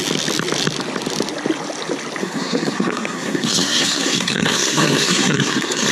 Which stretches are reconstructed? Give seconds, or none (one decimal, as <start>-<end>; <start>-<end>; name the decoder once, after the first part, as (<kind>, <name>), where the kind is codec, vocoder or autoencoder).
2.2-5.9 (codec, SNAC)